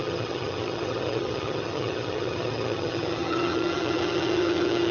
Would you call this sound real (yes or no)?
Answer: no